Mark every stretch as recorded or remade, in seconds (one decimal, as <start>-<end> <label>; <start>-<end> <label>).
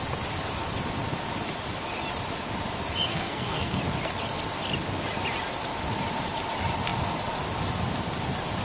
0.0-3.1 recorded; 3.1-3.8 remade; 3.8-8.6 recorded